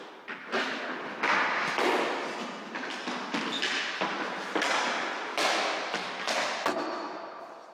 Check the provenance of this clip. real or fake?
real